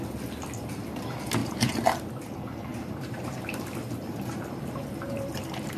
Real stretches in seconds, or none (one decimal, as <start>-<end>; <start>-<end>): 0.0-1.4; 2.1-2.7